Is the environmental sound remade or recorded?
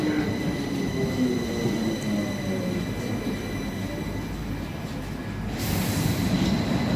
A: recorded